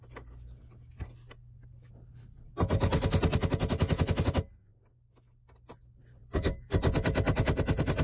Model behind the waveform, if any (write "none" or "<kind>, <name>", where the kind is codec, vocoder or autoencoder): none